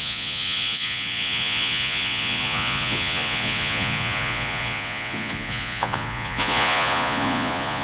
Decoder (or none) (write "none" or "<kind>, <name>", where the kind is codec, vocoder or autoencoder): vocoder, Vocos